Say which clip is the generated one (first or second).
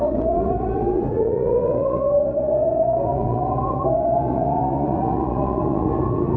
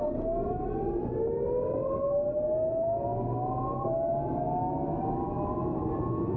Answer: first